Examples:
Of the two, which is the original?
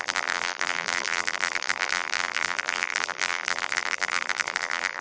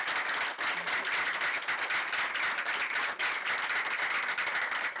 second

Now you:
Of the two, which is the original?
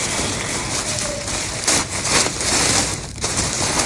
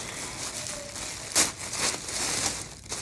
second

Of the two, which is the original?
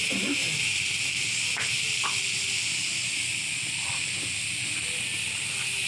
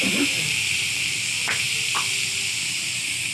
first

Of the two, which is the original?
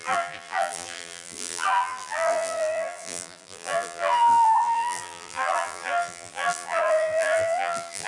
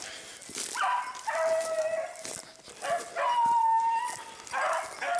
second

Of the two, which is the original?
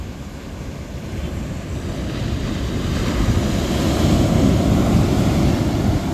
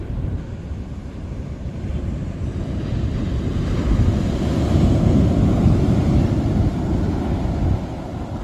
first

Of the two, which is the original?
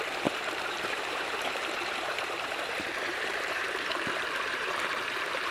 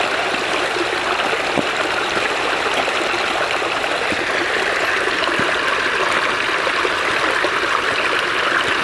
second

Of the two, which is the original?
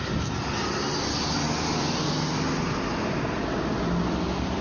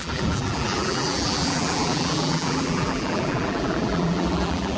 first